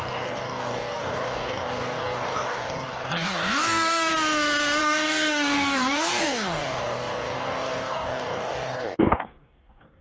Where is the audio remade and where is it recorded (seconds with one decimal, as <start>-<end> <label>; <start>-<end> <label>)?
0.0-4.1 remade; 4.1-4.8 recorded; 4.8-10.0 remade